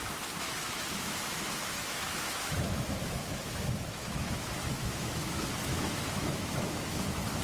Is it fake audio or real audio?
fake